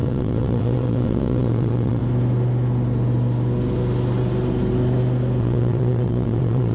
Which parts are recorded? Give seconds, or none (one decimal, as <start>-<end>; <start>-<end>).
2.0-5.4

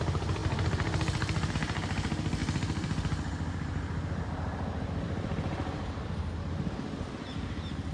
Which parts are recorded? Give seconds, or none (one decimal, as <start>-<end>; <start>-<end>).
none